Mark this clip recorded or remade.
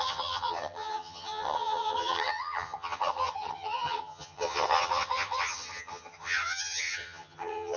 remade